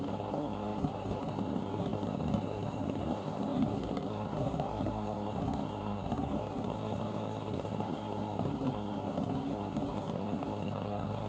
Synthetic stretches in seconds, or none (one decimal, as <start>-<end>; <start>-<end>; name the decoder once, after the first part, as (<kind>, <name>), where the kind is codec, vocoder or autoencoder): 0.0-11.3 (codec, SNAC)